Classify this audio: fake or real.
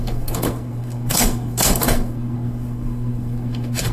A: fake